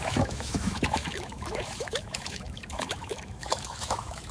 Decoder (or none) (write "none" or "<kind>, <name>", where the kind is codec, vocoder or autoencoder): autoencoder, DAC-VAE